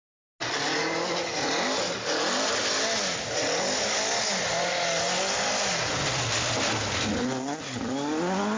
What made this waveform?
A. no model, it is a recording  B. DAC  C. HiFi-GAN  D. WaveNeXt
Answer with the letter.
A